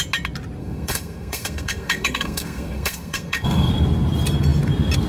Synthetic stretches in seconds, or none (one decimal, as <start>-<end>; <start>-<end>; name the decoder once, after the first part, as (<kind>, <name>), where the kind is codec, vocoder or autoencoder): 0.6-3.7 (codec, SNAC)

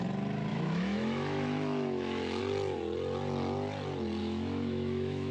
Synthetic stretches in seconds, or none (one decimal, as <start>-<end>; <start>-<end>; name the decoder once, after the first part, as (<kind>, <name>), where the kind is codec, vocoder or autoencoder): 0.5-2.4 (autoencoder, DAC-VAE); 4.2-5.3

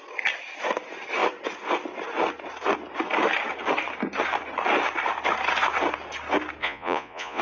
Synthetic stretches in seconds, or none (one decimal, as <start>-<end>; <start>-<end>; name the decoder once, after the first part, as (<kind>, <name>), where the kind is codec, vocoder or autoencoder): 6.6-7.4 (vocoder, Vocos)

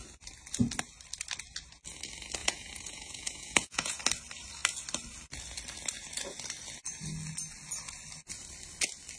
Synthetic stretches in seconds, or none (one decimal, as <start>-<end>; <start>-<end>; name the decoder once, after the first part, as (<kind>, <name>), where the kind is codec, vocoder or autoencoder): 2.4-4.0 (vocoder, Vocos)

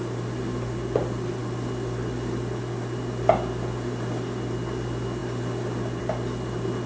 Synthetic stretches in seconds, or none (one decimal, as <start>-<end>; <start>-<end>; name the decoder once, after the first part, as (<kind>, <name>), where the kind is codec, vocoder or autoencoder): none